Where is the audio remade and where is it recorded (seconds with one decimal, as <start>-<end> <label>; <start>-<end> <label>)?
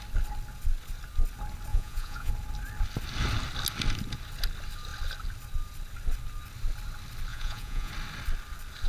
0.0-1.7 recorded; 1.7-2.3 remade; 2.3-7.3 recorded; 7.3-7.9 remade; 7.9-8.9 recorded